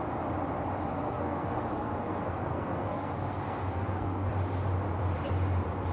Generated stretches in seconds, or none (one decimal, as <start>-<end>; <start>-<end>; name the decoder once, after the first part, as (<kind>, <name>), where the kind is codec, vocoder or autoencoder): 0.9-4.3 (codec, SNAC)